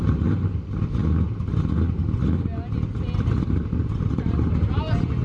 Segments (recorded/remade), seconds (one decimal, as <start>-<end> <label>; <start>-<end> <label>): 0.0-1.0 remade; 1.0-4.1 recorded; 4.1-5.2 remade